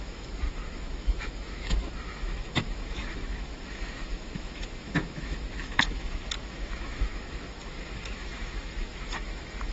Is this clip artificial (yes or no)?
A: yes